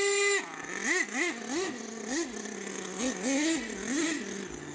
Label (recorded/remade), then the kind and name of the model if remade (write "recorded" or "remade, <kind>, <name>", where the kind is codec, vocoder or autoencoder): recorded